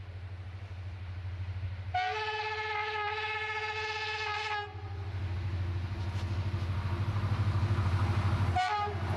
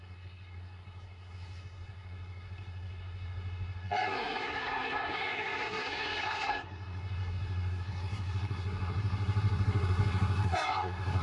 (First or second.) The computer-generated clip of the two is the second